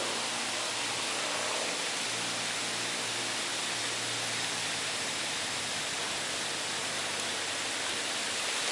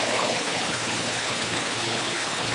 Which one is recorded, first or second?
first